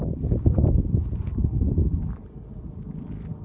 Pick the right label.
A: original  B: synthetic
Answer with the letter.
A